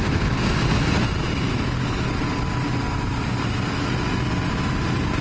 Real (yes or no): yes